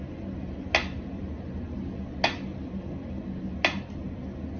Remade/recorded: recorded